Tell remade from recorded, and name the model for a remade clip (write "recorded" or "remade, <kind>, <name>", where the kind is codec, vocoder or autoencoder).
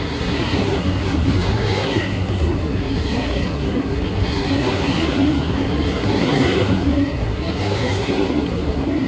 remade, codec, SNAC